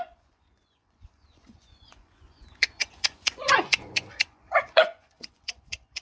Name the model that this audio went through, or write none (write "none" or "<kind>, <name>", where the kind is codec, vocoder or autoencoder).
vocoder, Vocos